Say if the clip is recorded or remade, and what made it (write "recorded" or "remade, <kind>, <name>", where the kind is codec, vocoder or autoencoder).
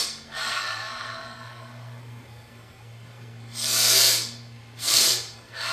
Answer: remade, codec, SNAC